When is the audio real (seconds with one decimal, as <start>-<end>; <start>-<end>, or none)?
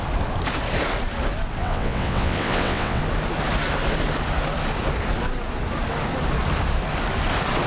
0.0-1.6; 3.0-7.7